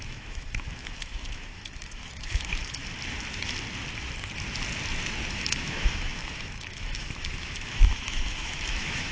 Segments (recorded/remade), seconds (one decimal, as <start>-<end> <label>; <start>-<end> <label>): 0.0-2.8 remade; 2.8-5.3 recorded; 5.3-9.1 remade